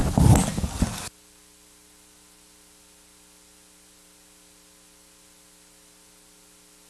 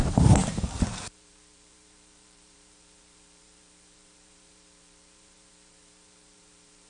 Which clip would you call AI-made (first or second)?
second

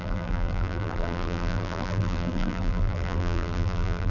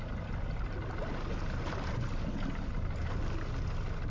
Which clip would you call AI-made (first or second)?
first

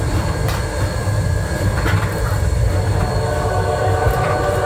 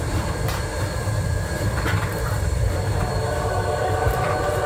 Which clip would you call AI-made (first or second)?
second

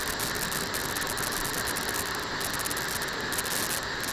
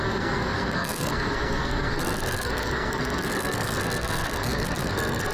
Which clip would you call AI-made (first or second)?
second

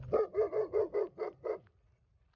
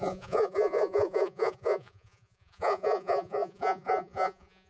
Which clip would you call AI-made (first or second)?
second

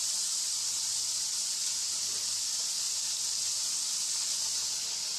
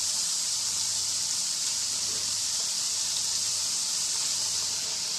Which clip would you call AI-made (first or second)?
second